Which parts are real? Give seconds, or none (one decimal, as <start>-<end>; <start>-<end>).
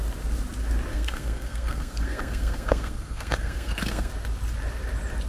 0.0-0.9; 4.1-5.3